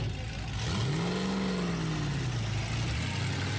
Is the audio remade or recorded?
recorded